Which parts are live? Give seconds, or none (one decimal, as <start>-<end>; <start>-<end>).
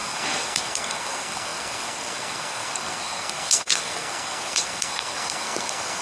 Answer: none